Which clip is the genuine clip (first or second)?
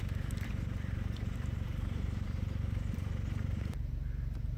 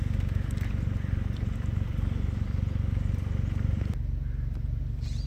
second